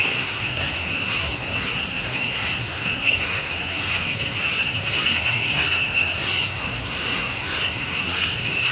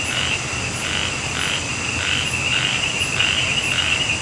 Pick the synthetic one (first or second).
first